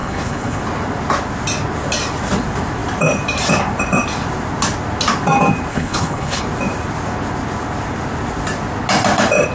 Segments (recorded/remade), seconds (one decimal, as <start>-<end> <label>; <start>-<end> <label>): 0.0-0.6 remade; 0.6-5.7 recorded; 5.7-6.4 remade; 6.4-9.5 recorded